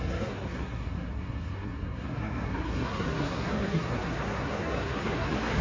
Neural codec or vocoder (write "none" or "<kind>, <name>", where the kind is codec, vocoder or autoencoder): codec, SNAC